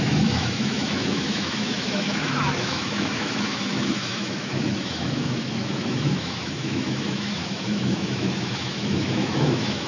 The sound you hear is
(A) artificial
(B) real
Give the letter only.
A